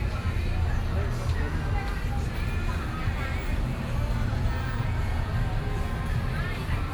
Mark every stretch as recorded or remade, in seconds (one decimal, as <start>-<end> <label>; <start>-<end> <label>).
0.0-4.3 recorded; 4.3-5.3 remade; 5.3-6.9 recorded